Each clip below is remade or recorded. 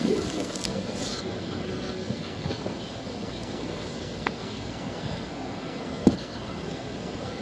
remade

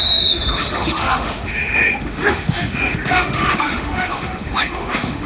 remade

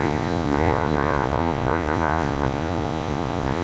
remade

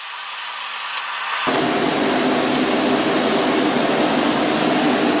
recorded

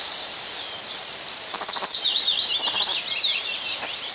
remade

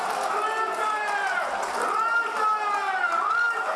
recorded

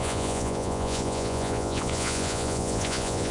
remade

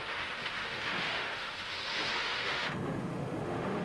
remade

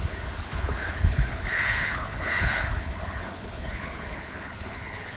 remade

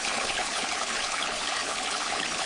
remade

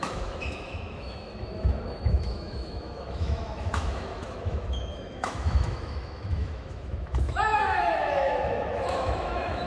remade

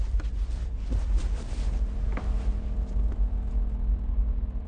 recorded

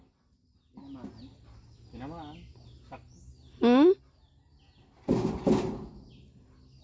recorded